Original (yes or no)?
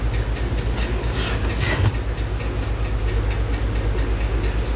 yes